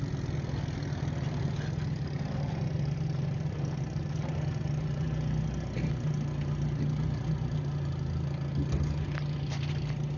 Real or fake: real